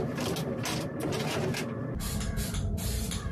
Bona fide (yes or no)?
no